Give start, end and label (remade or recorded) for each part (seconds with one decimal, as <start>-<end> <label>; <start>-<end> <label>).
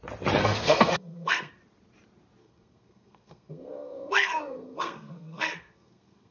0.0-0.4 recorded; 0.4-1.5 remade; 1.5-2.4 recorded; 2.4-6.3 remade